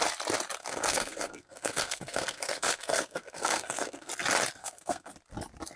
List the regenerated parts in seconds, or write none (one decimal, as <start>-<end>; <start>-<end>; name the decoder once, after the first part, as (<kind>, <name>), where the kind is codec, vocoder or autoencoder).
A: 0.6-4.1 (codec, SNAC); 4.6-5.1

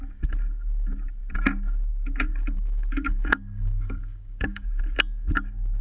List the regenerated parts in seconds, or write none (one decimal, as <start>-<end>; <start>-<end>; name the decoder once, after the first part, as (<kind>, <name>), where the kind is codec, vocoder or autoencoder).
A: 2.3-4.8 (codec, DAC)

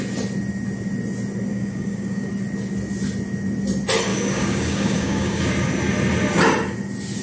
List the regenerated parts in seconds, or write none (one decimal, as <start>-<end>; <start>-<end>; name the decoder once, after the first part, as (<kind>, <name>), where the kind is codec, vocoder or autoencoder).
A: 1.5-2.3 (codec, DAC); 4.1-5.4

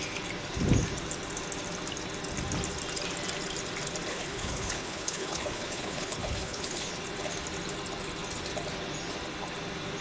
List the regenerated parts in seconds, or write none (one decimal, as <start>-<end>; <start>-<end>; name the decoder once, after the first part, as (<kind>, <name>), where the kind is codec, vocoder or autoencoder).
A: 4.1-6.9 (codec, HILCodec)

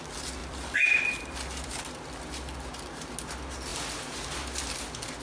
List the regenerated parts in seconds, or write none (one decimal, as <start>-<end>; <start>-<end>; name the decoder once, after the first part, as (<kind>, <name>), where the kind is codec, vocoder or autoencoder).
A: 0.4-1.9 (vocoder, BigVGAN v2)

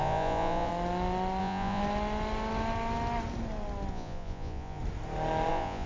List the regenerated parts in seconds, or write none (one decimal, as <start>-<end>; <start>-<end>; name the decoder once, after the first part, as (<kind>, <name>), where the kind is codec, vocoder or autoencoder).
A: 0.0-0.7 (vocoder, Vocos); 1.4-1.8; 3.9-4.8; 5.5-5.9